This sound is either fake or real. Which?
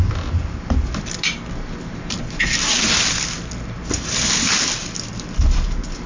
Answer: real